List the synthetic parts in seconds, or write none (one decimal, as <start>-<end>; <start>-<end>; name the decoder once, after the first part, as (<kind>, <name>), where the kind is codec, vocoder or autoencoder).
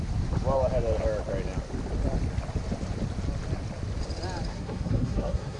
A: 4.5-5.6 (codec, SNAC)